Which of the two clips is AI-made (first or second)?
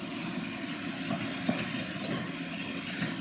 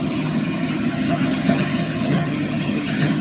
second